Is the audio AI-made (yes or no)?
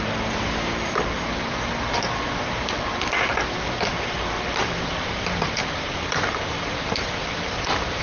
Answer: yes